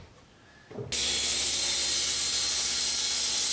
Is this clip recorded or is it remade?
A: recorded